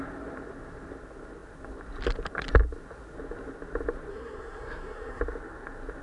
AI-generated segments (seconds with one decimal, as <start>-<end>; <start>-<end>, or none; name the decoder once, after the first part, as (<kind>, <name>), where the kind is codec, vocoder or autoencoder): 4.1-5.2 (codec, SNAC)